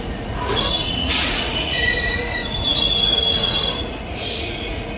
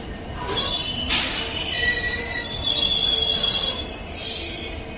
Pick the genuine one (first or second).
second